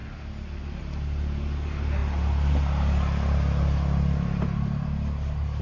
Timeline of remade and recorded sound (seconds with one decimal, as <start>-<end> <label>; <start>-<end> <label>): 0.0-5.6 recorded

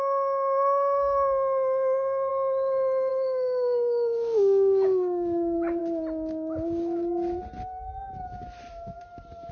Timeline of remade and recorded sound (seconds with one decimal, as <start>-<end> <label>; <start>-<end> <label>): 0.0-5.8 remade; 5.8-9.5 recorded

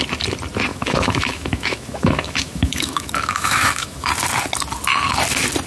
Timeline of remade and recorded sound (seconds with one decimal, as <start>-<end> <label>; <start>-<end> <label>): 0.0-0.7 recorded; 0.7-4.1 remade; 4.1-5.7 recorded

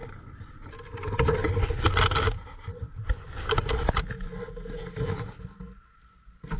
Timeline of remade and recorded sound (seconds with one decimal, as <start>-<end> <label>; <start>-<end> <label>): 0.0-6.6 recorded

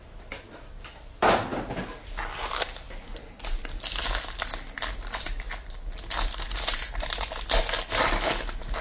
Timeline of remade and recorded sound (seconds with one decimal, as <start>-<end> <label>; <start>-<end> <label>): 0.0-8.8 recorded